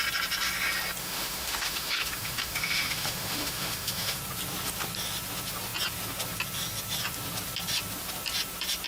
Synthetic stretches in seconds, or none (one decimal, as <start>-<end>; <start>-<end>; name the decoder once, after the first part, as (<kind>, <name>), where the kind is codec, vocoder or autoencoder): 1.0-4.2 (autoencoder, DAC-VAE)